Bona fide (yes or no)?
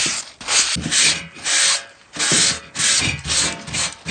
yes